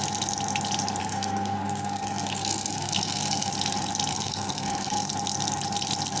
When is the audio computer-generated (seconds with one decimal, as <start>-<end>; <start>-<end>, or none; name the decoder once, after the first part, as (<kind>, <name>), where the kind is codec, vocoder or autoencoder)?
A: 1.0-3.5 (codec, SNAC); 4.1-5.1